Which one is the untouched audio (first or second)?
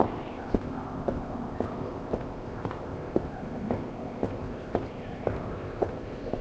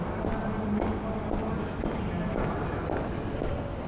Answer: second